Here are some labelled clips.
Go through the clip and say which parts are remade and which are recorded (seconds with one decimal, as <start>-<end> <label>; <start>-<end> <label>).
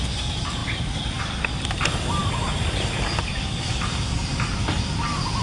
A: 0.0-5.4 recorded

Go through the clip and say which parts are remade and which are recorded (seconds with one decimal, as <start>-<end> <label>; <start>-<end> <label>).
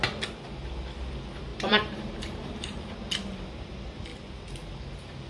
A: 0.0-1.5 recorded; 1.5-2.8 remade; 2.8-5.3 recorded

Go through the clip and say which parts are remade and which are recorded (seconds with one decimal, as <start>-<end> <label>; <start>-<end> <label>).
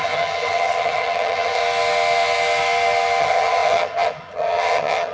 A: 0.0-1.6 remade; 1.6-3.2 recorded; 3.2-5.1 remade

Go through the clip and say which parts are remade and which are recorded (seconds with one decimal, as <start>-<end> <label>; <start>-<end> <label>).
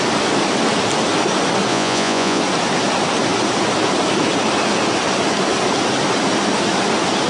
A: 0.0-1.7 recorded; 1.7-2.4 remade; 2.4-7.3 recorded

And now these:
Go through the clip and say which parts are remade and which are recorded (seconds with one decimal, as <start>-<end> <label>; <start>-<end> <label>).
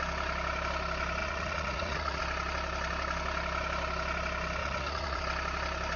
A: 0.0-1.2 recorded; 1.2-2.2 remade; 2.2-4.6 recorded; 4.6-5.2 remade; 5.2-6.0 recorded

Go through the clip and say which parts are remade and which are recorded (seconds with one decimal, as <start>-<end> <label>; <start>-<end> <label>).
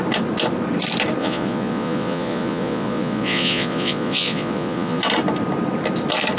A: 0.0-1.2 recorded; 1.2-5.0 remade; 5.0-6.4 recorded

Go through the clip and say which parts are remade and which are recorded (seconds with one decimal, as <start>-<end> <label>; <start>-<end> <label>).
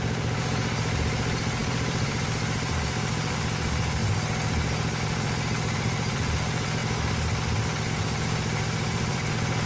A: 0.0-4.0 remade; 4.0-5.0 recorded; 5.0-6.8 remade; 6.8-7.9 recorded; 7.9-9.7 remade